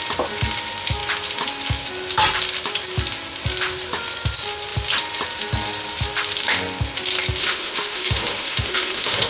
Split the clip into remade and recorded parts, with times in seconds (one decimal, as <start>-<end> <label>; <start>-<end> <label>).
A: 0.0-7.4 recorded; 7.4-9.3 remade